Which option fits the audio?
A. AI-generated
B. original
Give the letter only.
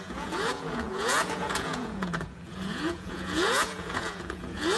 A